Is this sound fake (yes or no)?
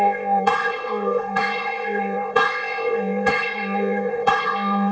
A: yes